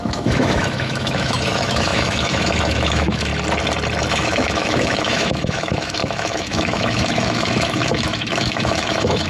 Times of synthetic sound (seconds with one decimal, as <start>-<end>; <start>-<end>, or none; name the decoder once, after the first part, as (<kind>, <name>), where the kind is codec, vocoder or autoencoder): 0.0-3.3 (autoencoder, DAC-VAE); 4.1-9.3